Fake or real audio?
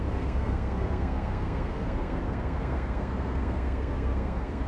fake